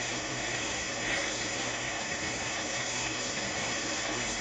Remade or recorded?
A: remade